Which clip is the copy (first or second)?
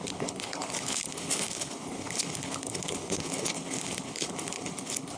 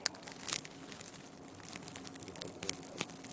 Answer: first